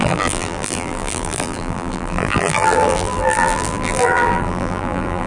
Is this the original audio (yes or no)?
no